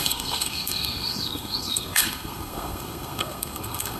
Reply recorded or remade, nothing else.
remade